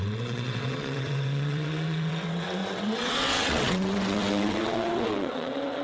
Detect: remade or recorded remade